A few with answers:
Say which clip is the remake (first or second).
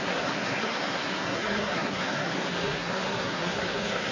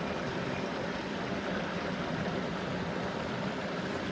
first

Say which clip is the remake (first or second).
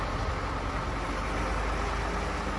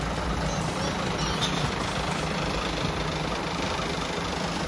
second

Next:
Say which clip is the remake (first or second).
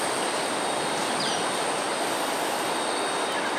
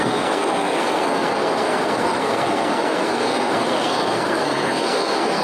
second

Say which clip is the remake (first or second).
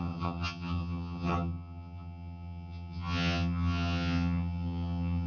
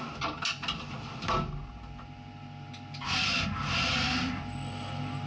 first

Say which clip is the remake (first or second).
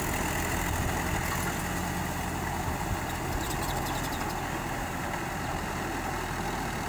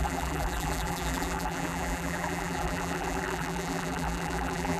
second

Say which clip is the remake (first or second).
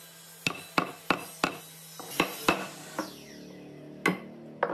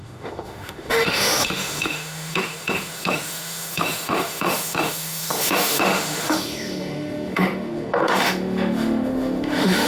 second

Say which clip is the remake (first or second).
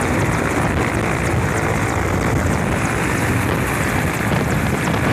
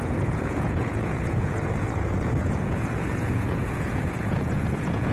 second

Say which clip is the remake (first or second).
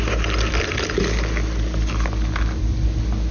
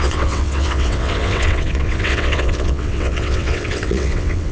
second